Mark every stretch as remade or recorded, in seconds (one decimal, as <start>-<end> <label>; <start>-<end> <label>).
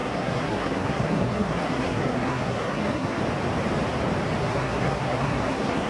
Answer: 0.0-3.2 remade; 3.2-4.4 recorded; 4.4-5.9 remade